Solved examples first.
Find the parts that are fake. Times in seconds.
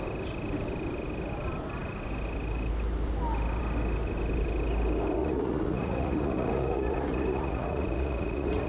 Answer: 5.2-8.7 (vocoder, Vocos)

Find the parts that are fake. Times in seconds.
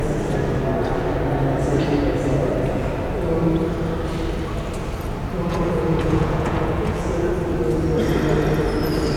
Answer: 5.4-7.3 (vocoder, Vocos)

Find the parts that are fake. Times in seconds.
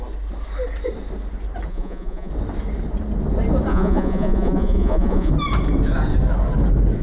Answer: 1.7-2.3 (vocoder, Vocos); 3.7-5.3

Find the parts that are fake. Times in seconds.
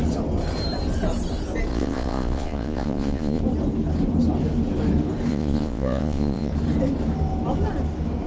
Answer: 1.7-3.4 (vocoder, Vocos); 5.3-6.5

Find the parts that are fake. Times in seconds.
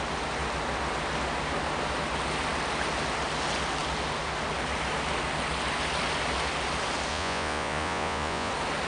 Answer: 7.1-8.5 (vocoder, Vocos)